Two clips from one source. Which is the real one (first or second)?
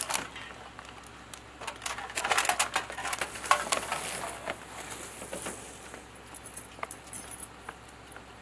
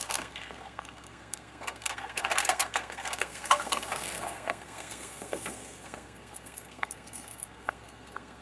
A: first